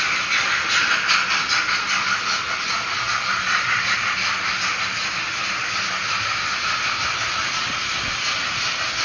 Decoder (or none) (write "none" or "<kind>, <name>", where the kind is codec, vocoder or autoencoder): none